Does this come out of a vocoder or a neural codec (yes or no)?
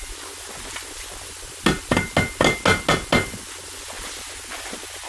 no